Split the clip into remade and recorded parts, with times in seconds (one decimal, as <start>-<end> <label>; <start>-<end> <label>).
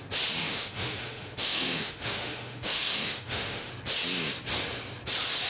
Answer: 0.0-0.4 recorded; 0.4-3.7 remade; 3.7-5.5 recorded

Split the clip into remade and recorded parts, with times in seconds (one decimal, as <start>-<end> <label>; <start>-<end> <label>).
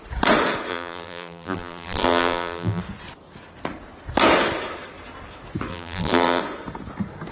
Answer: 0.0-0.7 recorded; 0.7-2.8 remade; 2.8-5.7 recorded; 5.7-6.4 remade; 6.4-7.3 recorded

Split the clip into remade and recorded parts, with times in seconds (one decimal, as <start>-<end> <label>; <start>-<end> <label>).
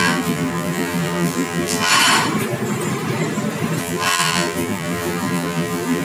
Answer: 0.0-1.9 remade; 1.9-3.8 recorded; 3.8-6.0 remade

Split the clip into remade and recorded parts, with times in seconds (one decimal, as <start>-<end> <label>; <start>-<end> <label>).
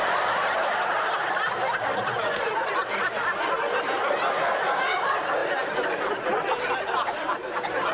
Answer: 0.0-7.9 recorded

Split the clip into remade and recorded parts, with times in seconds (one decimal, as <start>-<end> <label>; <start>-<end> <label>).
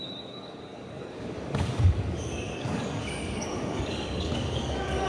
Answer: 0.0-5.1 remade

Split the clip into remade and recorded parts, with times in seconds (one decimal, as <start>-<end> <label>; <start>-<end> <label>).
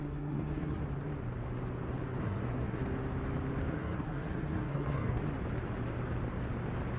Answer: 0.0-0.8 remade; 0.8-2.2 recorded; 2.2-2.8 remade; 2.8-3.7 recorded; 3.7-5.2 remade; 5.2-7.0 recorded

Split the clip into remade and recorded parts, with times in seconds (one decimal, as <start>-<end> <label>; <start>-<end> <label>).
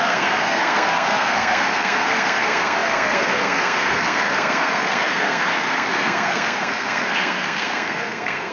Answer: 0.0-8.5 remade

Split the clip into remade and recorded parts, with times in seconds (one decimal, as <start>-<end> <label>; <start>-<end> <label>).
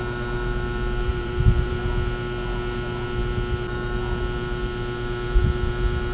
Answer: 0.0-1.1 recorded; 1.1-1.7 remade; 1.7-6.1 recorded